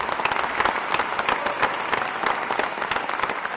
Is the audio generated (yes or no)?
no